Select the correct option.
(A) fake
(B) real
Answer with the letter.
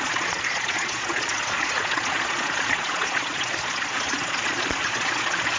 A